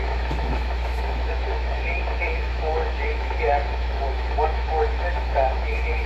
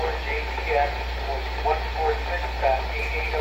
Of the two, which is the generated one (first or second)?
first